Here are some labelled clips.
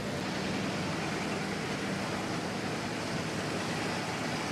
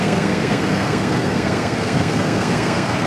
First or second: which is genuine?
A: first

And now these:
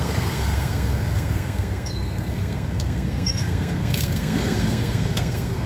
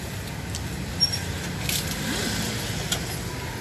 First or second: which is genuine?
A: second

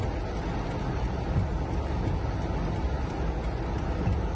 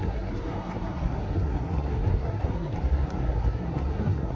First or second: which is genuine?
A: first